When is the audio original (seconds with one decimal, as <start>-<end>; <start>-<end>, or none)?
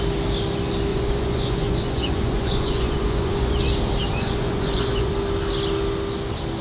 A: 0.0-0.9; 3.6-4.1; 5.1-6.6